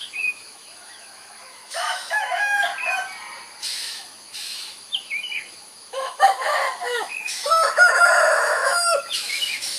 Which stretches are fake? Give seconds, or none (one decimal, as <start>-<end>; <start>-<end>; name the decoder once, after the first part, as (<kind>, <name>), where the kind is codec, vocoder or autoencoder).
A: 0.0-2.7 (autoencoder, DAC-VAE); 3.6-9.8